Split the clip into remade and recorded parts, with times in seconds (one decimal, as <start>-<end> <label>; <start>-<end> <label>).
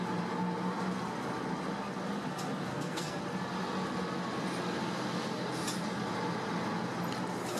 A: 0.0-2.7 recorded; 2.7-3.2 remade; 3.2-7.6 recorded